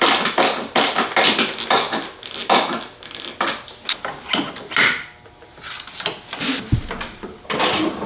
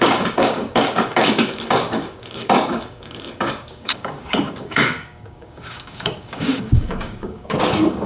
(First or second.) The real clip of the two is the first